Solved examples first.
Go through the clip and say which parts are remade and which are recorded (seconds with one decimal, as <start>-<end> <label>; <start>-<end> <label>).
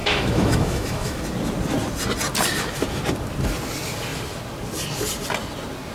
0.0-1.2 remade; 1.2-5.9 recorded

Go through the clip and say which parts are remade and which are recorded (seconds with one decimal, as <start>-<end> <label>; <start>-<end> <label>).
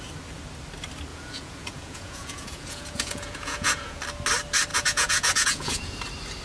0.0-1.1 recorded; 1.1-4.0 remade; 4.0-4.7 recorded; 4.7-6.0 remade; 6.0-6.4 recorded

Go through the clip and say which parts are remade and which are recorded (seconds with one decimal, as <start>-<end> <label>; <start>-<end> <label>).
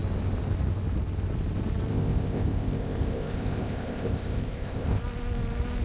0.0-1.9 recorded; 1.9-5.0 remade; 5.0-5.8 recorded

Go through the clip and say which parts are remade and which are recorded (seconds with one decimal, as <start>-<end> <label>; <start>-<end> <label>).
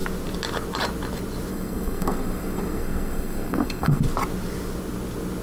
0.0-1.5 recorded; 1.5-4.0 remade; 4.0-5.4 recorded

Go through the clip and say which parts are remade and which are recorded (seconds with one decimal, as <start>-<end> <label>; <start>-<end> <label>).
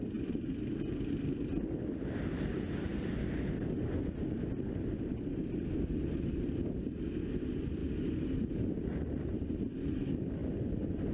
0.0-2.9 remade; 2.9-5.4 recorded; 5.4-7.8 remade; 7.8-8.5 recorded; 8.5-10.4 remade; 10.4-11.1 recorded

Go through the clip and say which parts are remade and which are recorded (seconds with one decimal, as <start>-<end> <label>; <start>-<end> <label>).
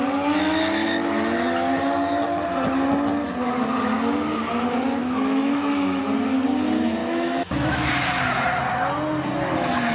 0.0-5.0 recorded; 5.0-6.0 remade; 6.0-7.0 recorded; 7.0-7.9 remade; 7.9-9.9 recorded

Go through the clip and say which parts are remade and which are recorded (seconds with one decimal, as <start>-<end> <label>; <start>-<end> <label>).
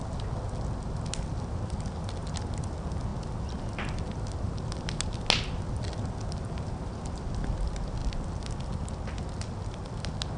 0.0-10.4 recorded